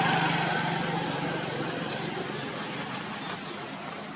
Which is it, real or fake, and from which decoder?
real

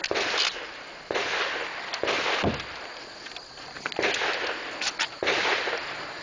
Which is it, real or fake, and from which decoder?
real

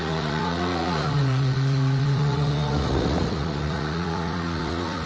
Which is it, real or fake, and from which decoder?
fake, vocoder, Vocos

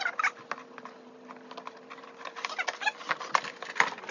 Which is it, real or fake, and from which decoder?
real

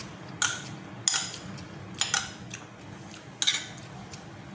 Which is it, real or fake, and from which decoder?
real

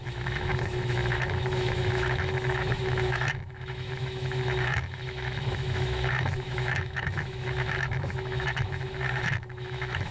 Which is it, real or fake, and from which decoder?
fake, autoencoder, DAC-VAE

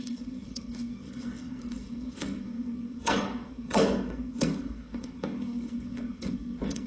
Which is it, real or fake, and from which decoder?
fake, codec, SNAC